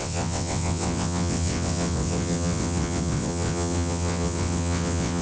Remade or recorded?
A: remade